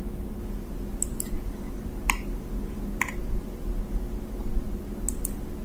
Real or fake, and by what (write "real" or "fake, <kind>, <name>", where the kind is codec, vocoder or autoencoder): real